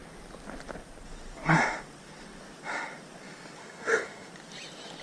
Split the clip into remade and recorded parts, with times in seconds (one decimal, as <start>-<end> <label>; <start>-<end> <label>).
0.0-3.6 recorded; 3.6-4.3 remade; 4.3-5.0 recorded